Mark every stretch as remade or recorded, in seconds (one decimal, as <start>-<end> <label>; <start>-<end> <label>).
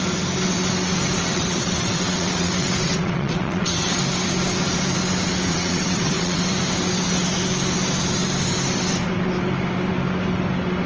0.0-1.2 recorded; 1.2-4.0 remade; 4.0-5.5 recorded; 5.5-6.4 remade; 6.4-10.9 recorded